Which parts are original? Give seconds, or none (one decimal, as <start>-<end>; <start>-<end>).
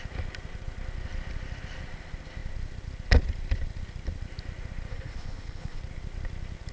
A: 0.0-4.9; 5.8-6.7